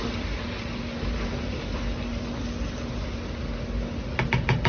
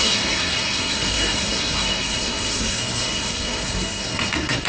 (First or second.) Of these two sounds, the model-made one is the second